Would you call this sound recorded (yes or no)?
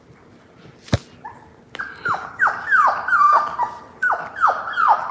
yes